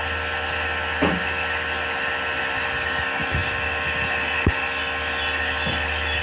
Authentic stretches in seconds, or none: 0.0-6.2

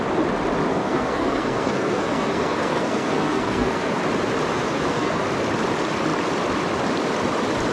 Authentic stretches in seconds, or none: 0.0-0.7; 4.0-4.7; 5.2-7.7

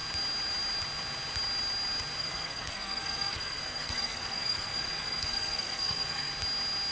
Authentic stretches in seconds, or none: 0.0-2.2; 6.3-6.9

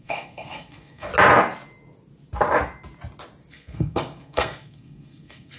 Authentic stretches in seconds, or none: 1.1-3.5

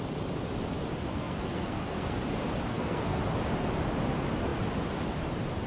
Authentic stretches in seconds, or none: 0.0-1.1; 2.2-2.7; 3.2-5.7

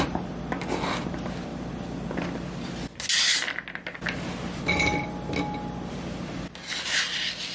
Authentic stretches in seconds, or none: 0.0-7.5

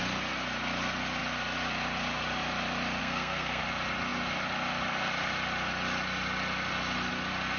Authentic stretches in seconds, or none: 0.0-3.0; 3.6-7.6